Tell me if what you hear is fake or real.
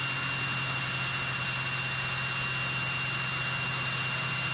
real